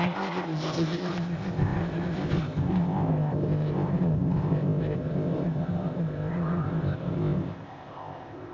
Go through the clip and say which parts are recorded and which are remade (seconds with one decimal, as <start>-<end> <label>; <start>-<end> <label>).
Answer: 0.0-8.5 remade